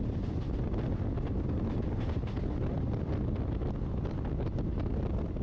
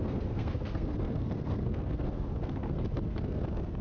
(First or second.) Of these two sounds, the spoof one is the second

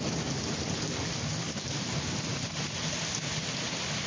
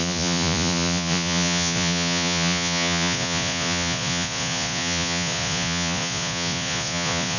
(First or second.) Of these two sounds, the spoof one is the second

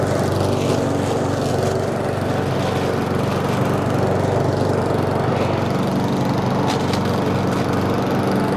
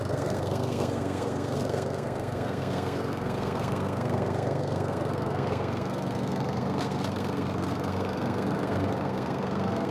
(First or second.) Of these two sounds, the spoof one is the second